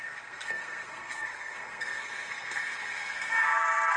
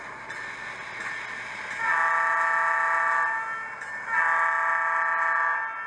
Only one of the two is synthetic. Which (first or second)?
first